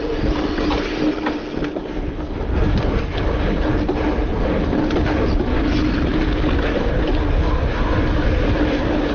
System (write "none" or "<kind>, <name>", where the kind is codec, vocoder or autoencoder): none